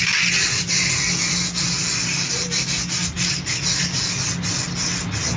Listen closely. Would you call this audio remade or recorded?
recorded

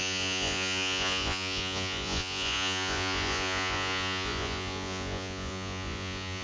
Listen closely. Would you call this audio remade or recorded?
remade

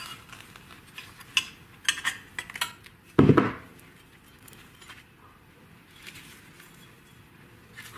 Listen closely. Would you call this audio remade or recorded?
recorded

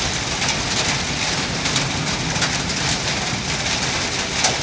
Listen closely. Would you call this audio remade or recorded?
recorded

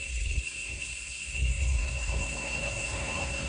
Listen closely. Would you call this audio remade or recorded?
remade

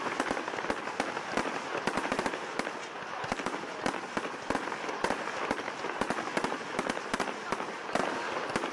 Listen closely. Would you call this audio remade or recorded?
recorded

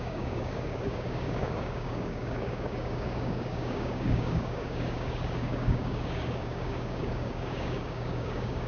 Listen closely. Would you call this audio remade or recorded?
remade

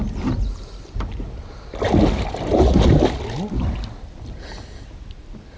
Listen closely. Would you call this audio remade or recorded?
recorded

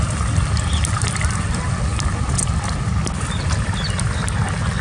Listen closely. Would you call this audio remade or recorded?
recorded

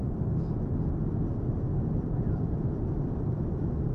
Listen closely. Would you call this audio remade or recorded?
recorded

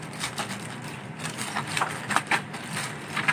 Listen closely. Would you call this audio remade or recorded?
remade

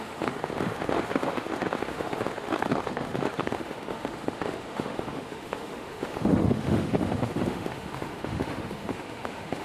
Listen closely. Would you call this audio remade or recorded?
remade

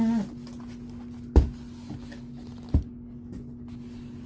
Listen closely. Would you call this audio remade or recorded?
recorded